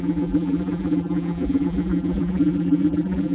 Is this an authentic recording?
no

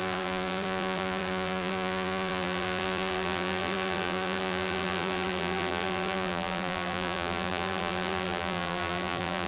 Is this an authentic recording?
no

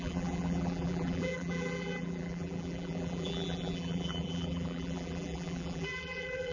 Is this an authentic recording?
no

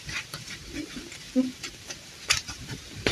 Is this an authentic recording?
no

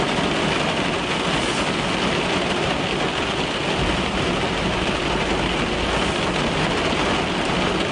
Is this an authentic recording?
yes